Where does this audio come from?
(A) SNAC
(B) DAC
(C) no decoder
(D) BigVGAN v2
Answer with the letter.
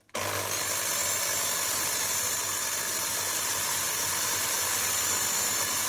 C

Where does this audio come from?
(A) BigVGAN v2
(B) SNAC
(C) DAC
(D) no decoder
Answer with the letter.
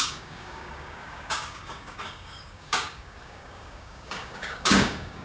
C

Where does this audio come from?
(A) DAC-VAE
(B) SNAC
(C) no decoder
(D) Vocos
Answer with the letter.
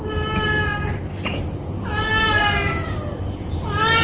C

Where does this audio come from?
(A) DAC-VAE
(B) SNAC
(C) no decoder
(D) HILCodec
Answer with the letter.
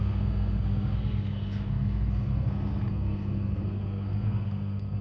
B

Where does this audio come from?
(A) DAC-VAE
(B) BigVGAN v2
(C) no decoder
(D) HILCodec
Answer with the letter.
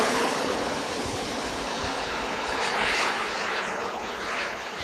D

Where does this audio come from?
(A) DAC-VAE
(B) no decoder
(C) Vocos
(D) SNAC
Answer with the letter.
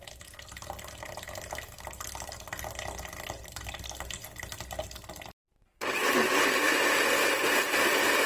B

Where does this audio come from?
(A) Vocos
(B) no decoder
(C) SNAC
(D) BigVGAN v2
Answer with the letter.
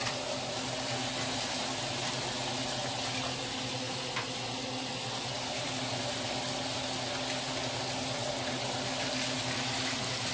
B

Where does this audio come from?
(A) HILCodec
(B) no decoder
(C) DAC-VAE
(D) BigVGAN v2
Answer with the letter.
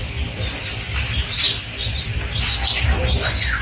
D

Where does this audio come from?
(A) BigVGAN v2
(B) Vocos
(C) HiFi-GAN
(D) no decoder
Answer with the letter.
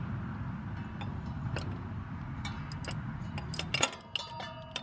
D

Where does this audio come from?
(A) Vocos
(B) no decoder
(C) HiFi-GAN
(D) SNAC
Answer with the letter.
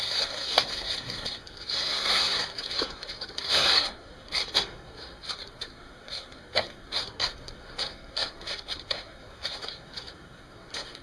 D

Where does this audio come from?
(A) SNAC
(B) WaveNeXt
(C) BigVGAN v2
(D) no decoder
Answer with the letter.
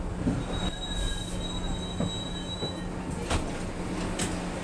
D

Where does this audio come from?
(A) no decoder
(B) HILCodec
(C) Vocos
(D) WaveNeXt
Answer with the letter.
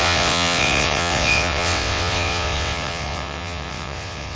D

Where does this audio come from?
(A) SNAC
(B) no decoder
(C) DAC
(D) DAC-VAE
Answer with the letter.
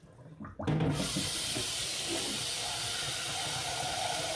B